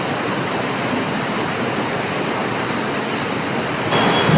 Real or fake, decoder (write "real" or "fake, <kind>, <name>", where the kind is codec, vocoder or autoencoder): real